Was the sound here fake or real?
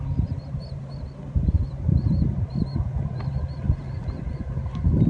fake